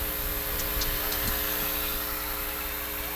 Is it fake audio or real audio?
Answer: real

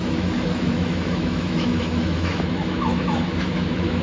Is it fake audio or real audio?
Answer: fake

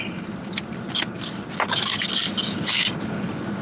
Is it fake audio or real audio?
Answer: real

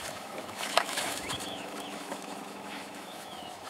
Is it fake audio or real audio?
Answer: fake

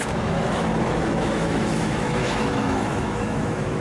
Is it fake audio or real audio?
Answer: fake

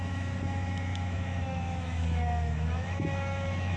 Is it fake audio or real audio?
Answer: fake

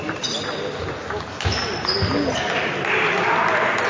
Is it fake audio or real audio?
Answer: real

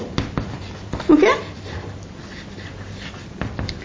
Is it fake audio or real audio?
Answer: real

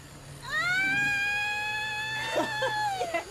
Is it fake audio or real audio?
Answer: real